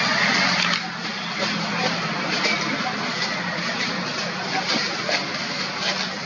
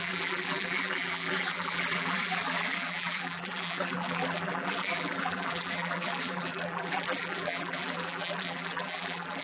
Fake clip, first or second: second